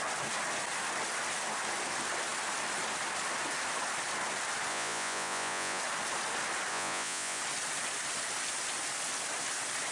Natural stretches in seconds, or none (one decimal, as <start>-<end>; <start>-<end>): 0.0-4.7; 5.8-6.7; 7.4-9.9

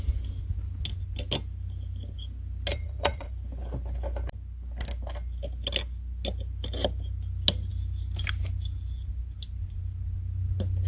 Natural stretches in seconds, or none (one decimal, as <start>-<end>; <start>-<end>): 0.0-2.7; 3.3-10.9

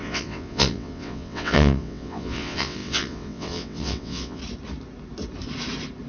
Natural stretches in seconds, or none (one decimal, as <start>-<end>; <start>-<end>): 4.4-6.1

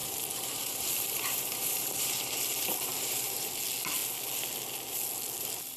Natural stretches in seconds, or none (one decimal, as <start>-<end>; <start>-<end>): 3.5-5.8

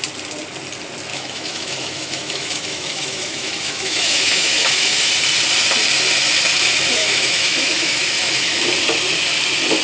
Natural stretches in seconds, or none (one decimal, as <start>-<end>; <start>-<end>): 0.0-1.1; 5.1-7.0; 8.6-9.8

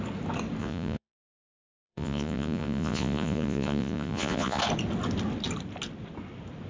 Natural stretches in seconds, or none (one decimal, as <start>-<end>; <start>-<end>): 0.0-0.6; 4.6-6.7

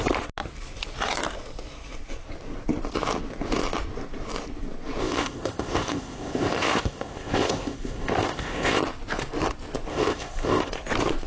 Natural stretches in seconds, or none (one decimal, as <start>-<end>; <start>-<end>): 0.0-5.0; 8.8-9.9; 10.7-11.3